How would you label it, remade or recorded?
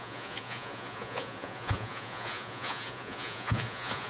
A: remade